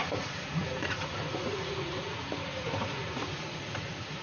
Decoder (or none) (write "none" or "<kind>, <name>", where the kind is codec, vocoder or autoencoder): vocoder, Vocos